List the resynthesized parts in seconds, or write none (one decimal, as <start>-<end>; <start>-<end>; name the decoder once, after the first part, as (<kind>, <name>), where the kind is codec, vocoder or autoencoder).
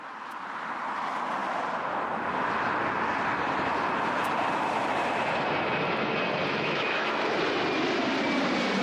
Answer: 6.5-7.3 (autoencoder, DAC-VAE)